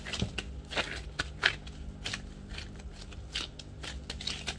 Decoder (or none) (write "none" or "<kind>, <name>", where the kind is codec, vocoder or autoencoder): none